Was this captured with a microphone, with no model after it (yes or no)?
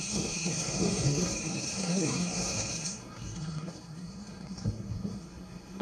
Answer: no